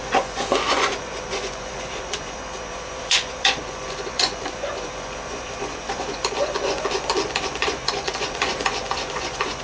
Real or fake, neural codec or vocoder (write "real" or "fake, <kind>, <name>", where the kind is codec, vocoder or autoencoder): fake, vocoder, Vocos